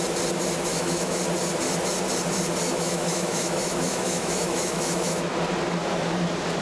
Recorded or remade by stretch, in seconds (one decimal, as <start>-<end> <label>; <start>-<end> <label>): 0.0-0.7 recorded; 0.7-1.2 remade; 1.2-2.7 recorded; 2.7-5.3 remade; 5.3-6.6 recorded